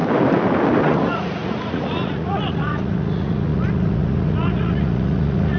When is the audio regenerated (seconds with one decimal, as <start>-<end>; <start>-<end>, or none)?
0.8-5.6